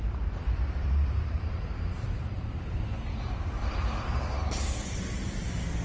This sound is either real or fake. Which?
fake